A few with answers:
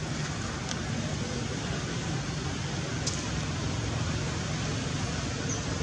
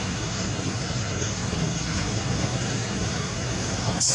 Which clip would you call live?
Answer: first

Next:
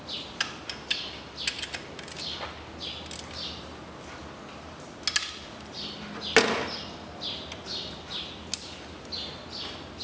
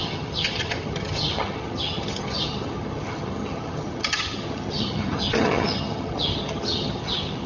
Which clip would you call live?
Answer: first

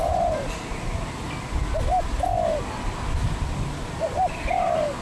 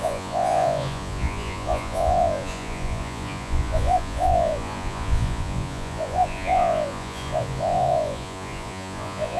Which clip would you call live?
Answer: first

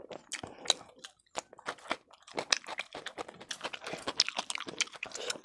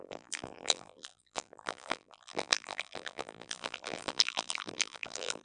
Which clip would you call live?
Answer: first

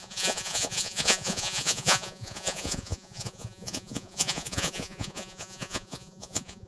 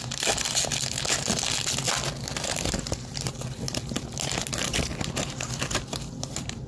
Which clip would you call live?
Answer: second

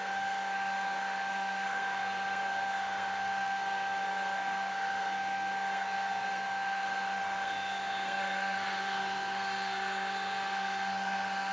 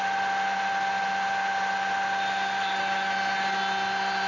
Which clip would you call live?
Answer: second